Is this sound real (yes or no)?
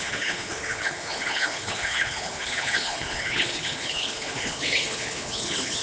no